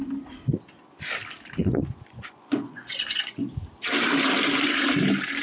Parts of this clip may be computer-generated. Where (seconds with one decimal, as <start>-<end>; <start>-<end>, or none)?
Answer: 1.6-3.4